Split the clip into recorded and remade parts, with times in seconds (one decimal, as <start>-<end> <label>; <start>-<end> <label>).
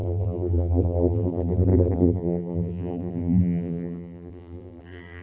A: 0.0-5.2 remade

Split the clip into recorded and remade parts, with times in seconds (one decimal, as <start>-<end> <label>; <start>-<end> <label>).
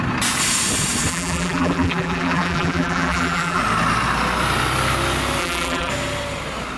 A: 0.0-1.1 recorded; 1.1-3.6 remade; 3.6-5.4 recorded; 5.4-5.9 remade; 5.9-6.8 recorded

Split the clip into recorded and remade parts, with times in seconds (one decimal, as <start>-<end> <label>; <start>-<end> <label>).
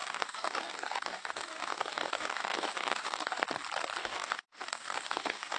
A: 0.0-3.4 remade; 3.4-4.0 recorded; 4.0-5.6 remade